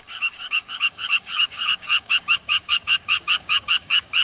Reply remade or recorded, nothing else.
remade